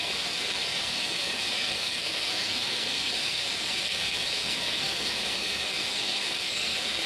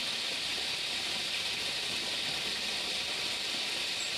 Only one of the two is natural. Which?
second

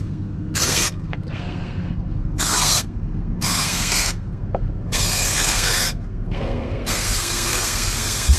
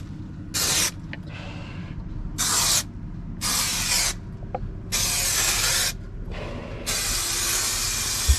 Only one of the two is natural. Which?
second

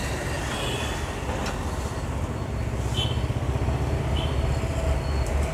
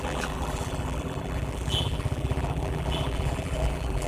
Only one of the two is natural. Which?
first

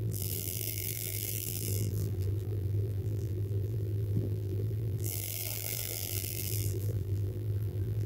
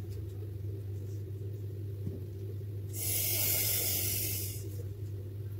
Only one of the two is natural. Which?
second